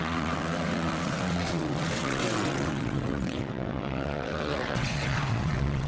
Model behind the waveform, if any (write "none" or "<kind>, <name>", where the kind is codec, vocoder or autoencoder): vocoder, WaveNeXt